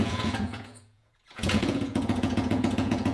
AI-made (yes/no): yes